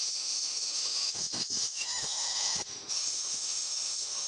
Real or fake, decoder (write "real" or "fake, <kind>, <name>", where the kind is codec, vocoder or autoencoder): fake, autoencoder, DAC-VAE